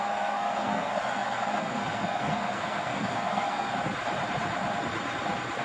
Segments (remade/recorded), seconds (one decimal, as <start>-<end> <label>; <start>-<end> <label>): 0.0-3.7 remade; 3.7-5.6 recorded

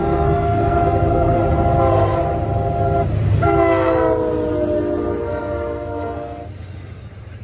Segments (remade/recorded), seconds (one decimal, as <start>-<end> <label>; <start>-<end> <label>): 0.0-1.4 remade; 1.4-5.2 recorded; 5.2-6.4 remade; 6.4-7.4 recorded

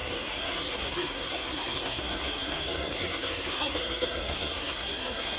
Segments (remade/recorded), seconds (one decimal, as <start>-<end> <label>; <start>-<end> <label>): 0.0-5.4 remade

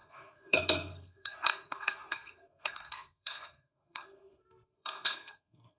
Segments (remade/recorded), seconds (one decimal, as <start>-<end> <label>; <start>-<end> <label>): 0.0-5.8 remade

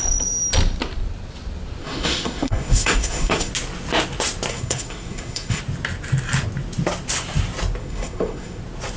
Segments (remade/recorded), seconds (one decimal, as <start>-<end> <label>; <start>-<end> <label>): 0.0-1.8 recorded; 1.8-3.5 remade; 3.5-4.5 recorded; 4.5-5.6 remade; 5.6-7.8 recorded; 7.8-8.6 remade; 8.6-9.0 recorded

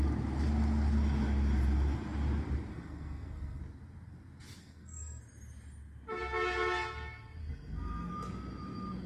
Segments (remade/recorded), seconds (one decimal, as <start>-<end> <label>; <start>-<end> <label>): 0.0-2.7 recorded; 2.7-3.6 remade; 3.6-4.6 recorded; 4.6-5.2 remade; 5.2-7.4 recorded; 7.4-8.1 remade; 8.1-9.1 recorded

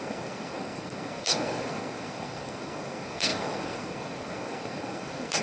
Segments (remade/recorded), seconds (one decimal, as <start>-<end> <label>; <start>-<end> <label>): 0.0-5.4 remade